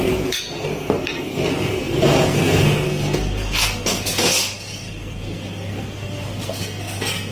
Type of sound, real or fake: fake